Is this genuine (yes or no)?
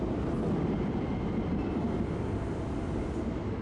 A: yes